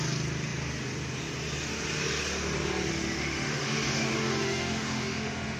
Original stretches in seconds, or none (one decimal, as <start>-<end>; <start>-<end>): 0.0-2.9